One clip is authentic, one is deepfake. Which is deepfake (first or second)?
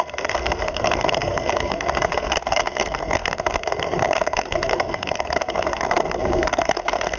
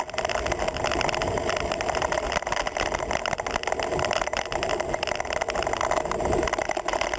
first